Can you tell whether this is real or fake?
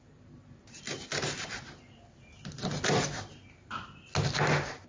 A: real